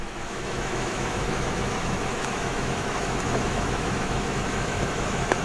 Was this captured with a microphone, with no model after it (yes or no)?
no